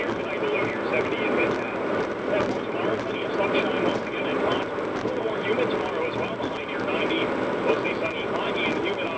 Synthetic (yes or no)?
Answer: no